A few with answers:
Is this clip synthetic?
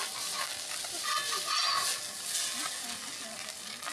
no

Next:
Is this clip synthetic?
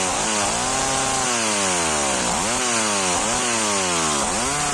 no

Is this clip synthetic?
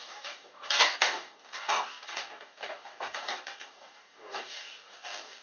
yes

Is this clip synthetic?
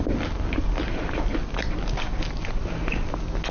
no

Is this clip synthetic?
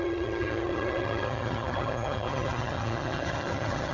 yes